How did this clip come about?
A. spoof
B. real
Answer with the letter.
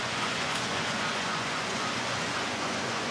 A